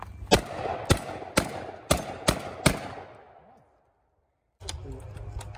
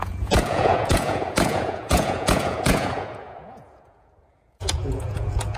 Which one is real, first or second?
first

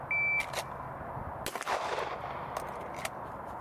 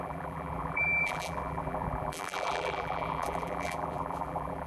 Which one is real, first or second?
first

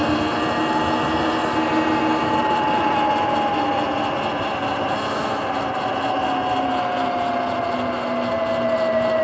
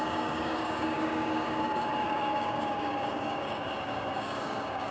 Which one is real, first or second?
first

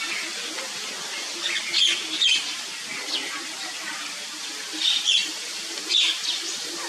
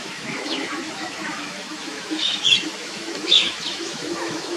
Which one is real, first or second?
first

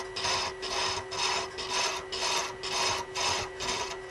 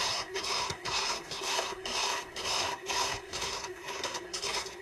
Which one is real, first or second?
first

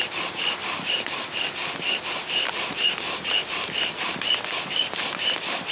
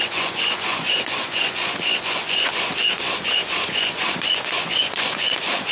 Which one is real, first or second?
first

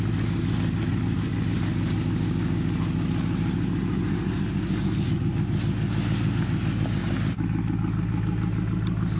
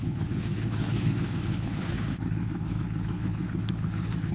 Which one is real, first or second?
first